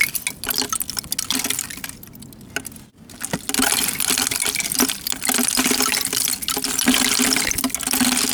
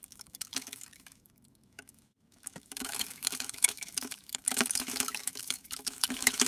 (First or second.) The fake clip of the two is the second